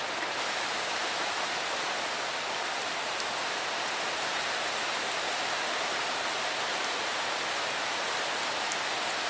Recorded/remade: recorded